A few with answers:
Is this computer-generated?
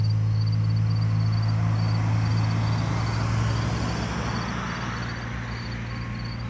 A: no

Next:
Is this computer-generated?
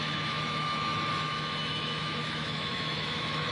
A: yes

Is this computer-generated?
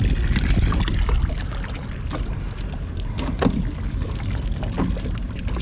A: no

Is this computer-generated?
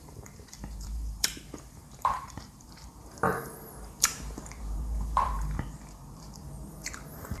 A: yes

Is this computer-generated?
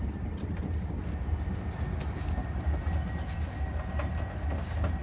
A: no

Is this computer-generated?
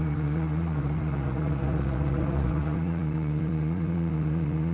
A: yes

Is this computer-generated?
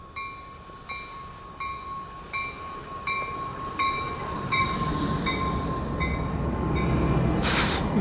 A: no